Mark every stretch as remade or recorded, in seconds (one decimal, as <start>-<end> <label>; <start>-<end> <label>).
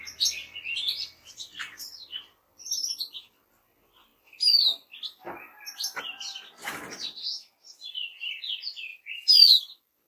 0.0-8.9 recorded; 8.9-9.6 remade; 9.6-10.1 recorded